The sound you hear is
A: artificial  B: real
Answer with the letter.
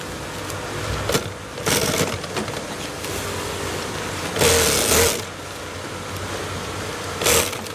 B